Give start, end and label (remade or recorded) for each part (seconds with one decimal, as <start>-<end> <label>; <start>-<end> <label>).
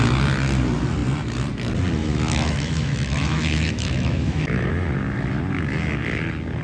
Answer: 0.0-2.0 recorded; 2.0-4.7 remade; 4.7-6.6 recorded